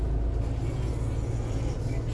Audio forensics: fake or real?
real